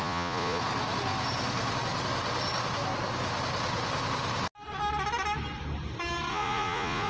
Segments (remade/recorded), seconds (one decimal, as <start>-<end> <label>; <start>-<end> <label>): 0.0-0.6 remade; 0.6-6.3 recorded; 6.3-7.1 remade